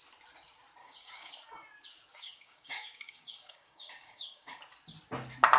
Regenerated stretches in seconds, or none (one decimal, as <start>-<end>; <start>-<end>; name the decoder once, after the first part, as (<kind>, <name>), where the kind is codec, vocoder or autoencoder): 0.8-1.3 (codec, DAC); 2.1-4.6